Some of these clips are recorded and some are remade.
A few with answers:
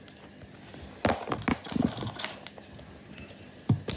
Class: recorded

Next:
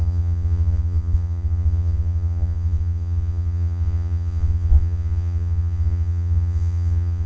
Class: remade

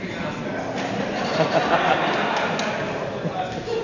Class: recorded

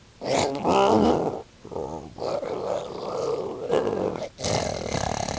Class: recorded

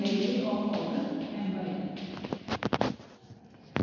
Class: recorded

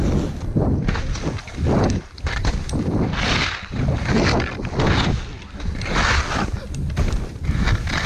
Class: recorded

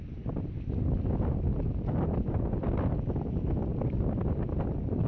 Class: recorded